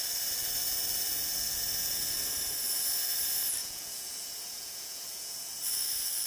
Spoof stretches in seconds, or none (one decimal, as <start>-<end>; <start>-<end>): 3.6-5.6